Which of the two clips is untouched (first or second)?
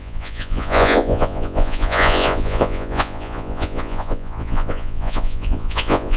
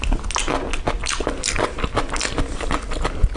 second